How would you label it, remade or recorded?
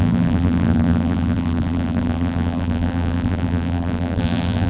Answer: remade